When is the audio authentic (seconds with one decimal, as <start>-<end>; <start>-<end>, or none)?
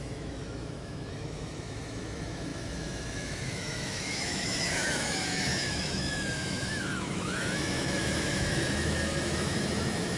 none